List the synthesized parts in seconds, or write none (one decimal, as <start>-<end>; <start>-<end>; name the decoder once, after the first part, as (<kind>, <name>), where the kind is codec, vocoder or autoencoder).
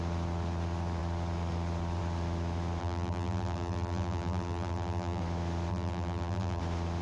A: 2.8-5.2 (vocoder, BigVGAN v2); 5.7-6.6